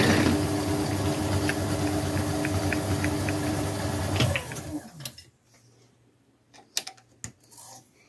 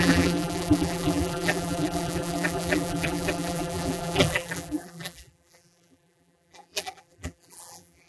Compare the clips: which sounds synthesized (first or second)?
second